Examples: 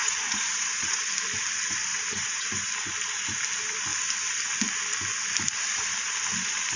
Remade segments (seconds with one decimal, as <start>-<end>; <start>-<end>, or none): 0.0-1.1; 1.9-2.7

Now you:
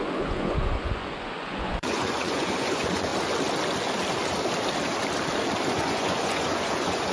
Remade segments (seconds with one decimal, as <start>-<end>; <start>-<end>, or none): 0.0-3.1; 5.7-7.1

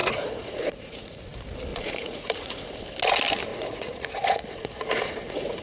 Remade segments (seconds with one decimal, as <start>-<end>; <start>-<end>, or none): 0.0-1.2; 1.7-2.8; 3.5-5.6

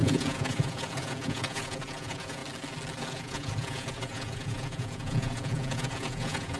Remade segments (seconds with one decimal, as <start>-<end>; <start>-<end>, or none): 0.0-2.4; 3.1-6.6

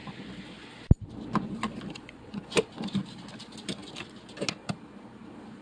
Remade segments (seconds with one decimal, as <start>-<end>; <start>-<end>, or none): 2.0-2.7

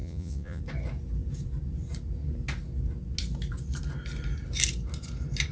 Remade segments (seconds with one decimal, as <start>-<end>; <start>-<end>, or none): 0.0-0.6